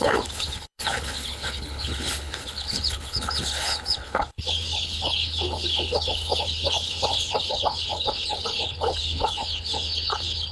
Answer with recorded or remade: remade